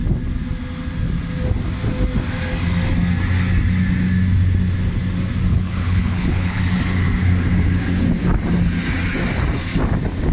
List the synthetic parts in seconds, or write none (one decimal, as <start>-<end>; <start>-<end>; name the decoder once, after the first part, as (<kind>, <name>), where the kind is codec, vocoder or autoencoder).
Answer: 5.5-6.6 (codec, HILCodec)